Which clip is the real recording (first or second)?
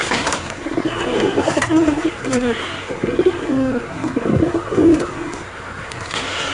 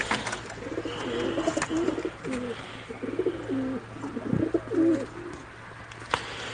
second